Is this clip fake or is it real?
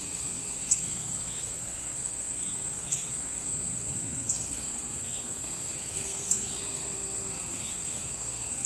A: fake